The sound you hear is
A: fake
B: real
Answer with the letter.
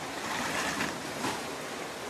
B